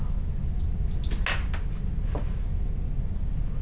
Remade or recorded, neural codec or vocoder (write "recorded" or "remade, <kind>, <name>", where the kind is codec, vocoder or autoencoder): recorded